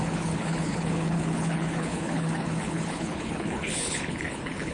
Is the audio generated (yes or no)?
yes